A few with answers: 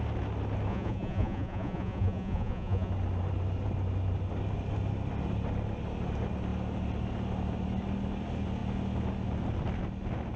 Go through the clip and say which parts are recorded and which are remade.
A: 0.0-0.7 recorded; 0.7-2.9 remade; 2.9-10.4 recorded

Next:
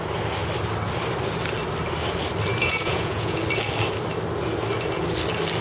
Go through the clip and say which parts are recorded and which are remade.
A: 0.0-2.5 recorded; 2.5-3.4 remade; 3.4-5.6 recorded

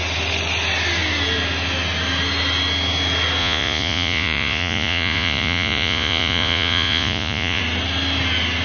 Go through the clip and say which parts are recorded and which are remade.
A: 0.0-3.4 recorded; 3.4-7.6 remade; 7.6-8.6 recorded

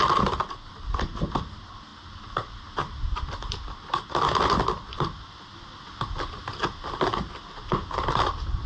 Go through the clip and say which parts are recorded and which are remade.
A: 0.0-8.7 recorded

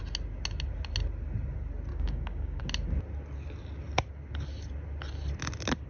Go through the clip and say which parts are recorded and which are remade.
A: 0.0-1.9 recorded; 1.9-2.6 remade; 2.6-5.9 recorded

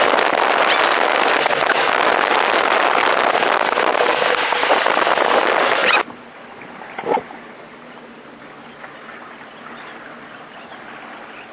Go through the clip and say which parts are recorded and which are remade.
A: 0.0-11.5 recorded

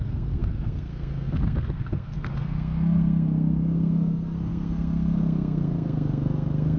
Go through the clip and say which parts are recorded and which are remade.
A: 0.0-6.8 remade